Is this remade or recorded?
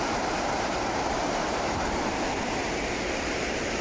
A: remade